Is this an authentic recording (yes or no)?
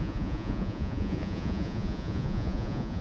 no